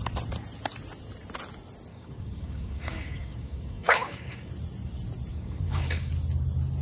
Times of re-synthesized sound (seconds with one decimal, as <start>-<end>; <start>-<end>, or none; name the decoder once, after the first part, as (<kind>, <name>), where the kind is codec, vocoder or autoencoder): 1.9-4.5 (codec, DAC); 5.3-6.1